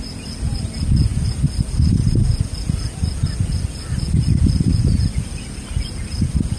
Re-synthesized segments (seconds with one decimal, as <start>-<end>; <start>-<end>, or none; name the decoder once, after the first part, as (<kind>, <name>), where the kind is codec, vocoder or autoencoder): none